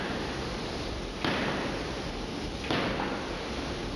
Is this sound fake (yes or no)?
no